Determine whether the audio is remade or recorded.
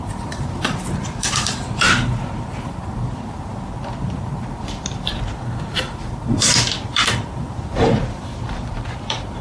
remade